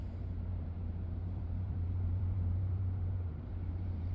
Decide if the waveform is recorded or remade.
remade